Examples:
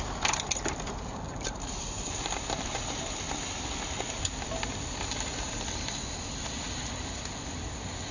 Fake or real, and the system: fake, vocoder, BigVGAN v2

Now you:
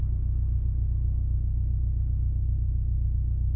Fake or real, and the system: real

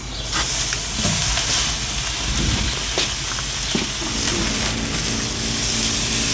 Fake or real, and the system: real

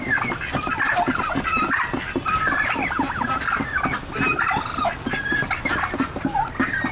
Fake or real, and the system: real